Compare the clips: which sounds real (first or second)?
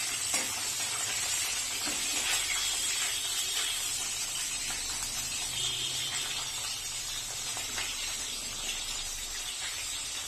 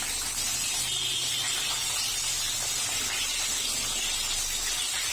second